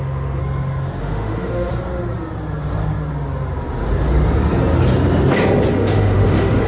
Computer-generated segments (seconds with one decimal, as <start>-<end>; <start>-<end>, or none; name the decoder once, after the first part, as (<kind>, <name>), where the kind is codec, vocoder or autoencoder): 0.0-0.4 (autoencoder, DAC-VAE); 1.0-1.7; 5.7-6.7